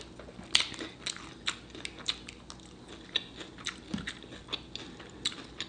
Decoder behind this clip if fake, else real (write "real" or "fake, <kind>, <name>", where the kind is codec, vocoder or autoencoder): real